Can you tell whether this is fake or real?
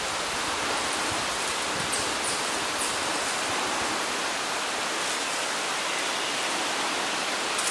real